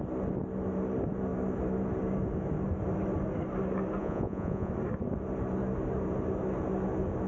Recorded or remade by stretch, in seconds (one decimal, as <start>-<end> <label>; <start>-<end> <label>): 0.0-4.0 recorded; 4.0-4.7 remade; 4.7-7.3 recorded